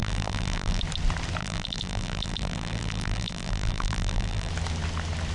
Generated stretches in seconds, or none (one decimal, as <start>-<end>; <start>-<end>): 0.0-0.8; 1.4-4.5